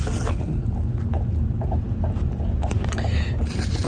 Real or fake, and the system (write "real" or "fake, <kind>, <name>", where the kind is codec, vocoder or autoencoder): real